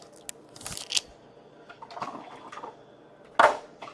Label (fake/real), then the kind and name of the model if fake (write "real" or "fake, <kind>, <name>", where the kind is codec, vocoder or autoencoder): real